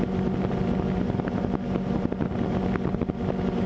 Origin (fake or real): real